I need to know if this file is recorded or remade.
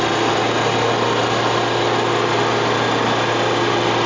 recorded